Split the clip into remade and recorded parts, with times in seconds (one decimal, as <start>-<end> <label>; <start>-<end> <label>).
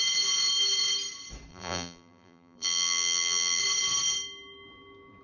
0.0-1.5 recorded; 1.5-3.6 remade; 3.6-5.2 recorded